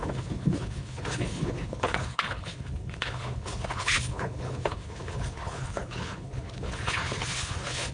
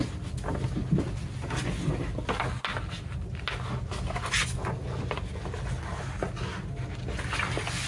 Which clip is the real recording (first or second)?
second